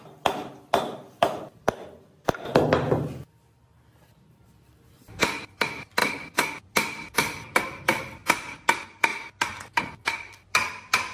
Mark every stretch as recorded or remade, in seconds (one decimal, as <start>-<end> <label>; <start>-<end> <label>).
0.0-4.2 recorded; 4.2-9.1 remade; 9.1-9.8 recorded; 9.8-11.1 remade